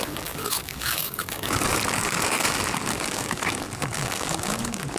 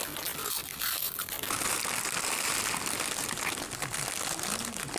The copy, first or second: first